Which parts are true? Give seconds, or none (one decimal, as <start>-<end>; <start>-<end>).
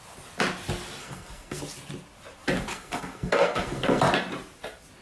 0.0-1.0; 1.6-2.7; 4.0-5.0